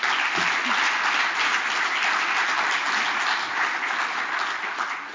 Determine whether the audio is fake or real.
real